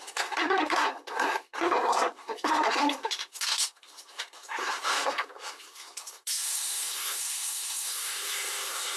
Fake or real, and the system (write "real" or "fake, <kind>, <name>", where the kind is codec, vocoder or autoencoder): fake, codec, SNAC